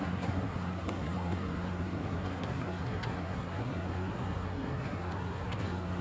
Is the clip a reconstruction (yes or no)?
yes